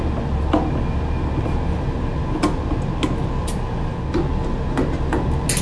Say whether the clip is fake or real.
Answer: real